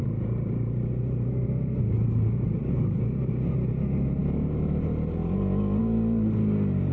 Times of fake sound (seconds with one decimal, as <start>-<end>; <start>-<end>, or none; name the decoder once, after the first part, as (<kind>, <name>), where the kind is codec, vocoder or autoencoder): none